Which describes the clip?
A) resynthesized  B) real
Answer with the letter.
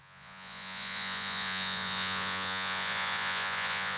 A